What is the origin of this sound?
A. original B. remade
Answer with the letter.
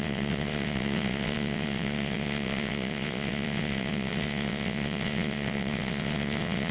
B